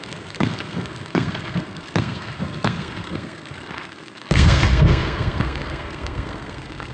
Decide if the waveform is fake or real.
fake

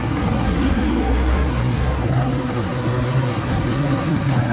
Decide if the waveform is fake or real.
fake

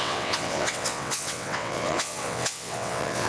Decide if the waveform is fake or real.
fake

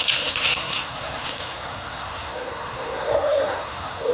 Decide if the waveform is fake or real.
fake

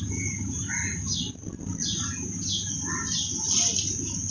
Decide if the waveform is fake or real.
real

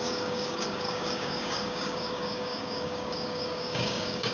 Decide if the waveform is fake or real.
fake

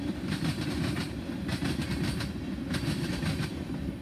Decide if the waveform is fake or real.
fake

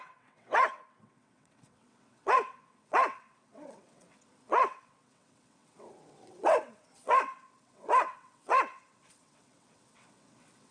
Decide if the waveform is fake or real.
fake